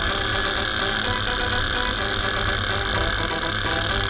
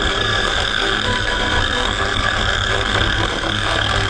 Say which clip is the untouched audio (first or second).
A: first